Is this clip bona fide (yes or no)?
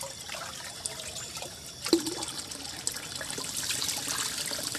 yes